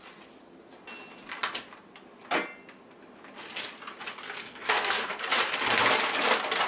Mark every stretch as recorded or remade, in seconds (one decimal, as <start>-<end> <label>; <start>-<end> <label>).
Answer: 0.0-4.4 recorded; 4.4-5.2 remade; 5.2-6.7 recorded